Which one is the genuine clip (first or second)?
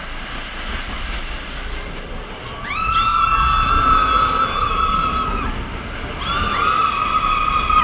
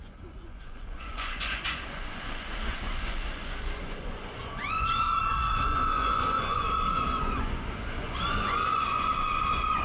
first